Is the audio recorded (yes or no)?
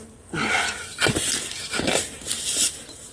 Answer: yes